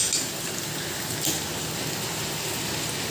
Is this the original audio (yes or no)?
yes